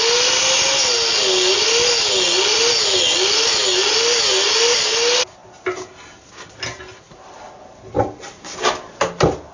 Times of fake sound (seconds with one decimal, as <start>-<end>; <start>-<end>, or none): none